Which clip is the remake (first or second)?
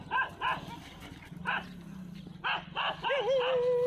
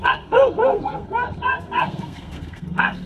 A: second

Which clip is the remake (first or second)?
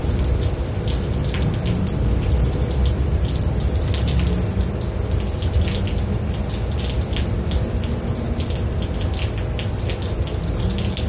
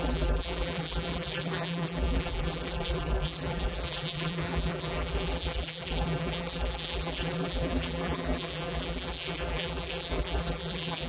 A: second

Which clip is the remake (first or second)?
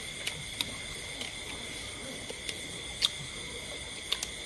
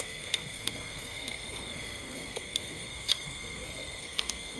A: second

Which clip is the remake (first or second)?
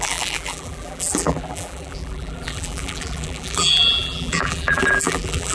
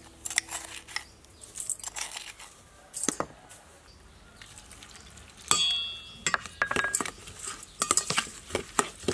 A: first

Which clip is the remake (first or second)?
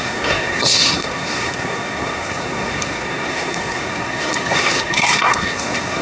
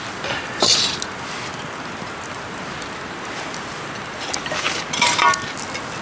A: first